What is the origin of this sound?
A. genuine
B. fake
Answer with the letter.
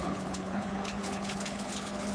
B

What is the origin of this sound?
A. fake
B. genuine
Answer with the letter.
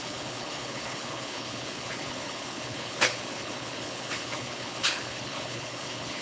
A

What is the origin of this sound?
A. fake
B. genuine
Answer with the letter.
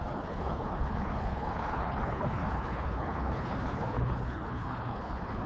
A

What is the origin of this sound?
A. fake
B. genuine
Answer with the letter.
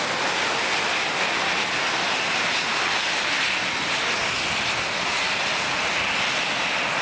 B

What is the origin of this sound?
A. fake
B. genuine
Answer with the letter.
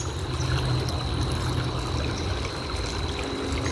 B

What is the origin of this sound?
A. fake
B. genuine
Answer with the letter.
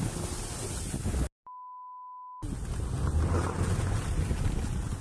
B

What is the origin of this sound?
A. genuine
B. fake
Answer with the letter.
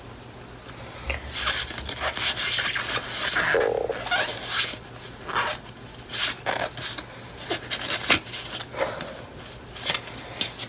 A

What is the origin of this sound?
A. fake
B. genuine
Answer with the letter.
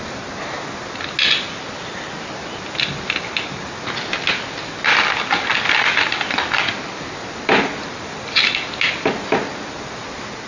B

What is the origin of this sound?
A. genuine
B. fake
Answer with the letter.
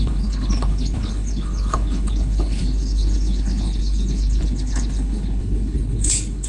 B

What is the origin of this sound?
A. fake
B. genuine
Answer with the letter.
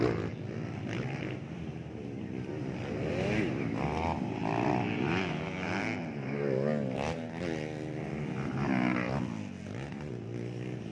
B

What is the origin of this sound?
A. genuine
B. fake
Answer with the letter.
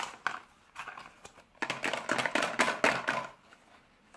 A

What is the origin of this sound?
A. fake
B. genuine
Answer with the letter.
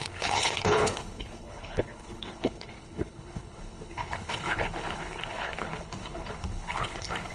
A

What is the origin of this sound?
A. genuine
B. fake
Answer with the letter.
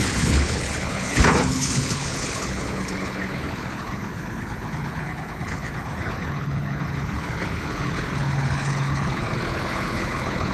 B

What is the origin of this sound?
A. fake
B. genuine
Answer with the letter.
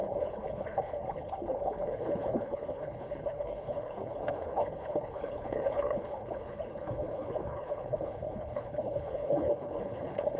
A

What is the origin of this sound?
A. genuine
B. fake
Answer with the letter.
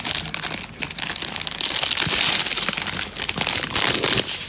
A